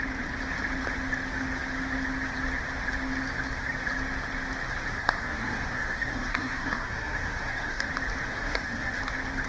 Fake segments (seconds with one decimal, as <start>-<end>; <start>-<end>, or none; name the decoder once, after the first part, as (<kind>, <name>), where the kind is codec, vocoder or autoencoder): 4.9-7.9 (codec, SNAC); 8.3-9.0